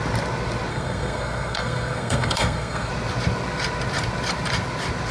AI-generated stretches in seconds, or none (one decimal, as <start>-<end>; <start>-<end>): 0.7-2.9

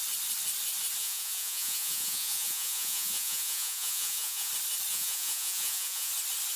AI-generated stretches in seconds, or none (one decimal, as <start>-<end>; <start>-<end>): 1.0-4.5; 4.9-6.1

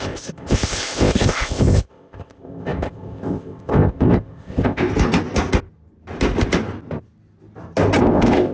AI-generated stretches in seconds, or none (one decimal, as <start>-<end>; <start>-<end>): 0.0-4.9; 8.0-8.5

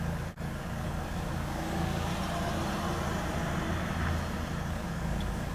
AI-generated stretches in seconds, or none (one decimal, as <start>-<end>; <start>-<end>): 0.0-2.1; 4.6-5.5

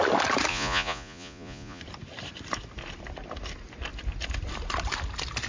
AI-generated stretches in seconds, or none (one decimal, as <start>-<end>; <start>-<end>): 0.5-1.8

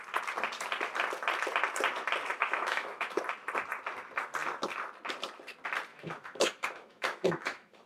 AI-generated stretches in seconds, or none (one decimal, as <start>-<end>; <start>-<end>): 2.3-3.2; 5.9-7.9